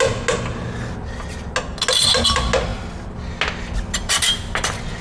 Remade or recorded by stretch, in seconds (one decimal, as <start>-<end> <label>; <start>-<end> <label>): 0.0-5.0 recorded